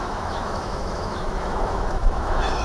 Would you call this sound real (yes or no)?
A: no